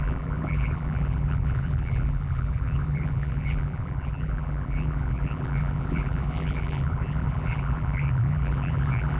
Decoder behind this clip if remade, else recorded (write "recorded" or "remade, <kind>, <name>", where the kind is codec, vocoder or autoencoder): remade, vocoder, BigVGAN v2